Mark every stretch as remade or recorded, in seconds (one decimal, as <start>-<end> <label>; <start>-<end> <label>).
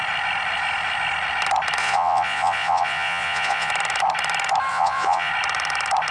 0.0-1.8 recorded; 1.8-3.7 remade; 3.7-4.7 recorded; 4.7-5.3 remade; 5.3-6.1 recorded